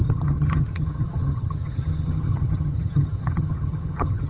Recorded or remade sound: remade